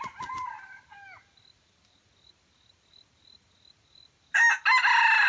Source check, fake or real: real